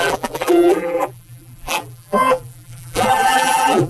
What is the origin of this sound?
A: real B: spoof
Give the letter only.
B